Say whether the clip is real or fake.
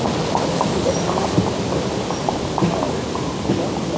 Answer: real